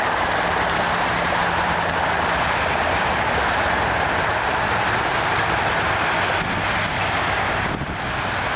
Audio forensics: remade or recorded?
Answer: recorded